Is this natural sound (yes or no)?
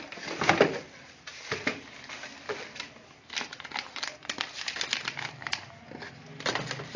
yes